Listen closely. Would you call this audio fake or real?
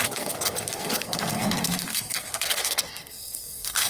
fake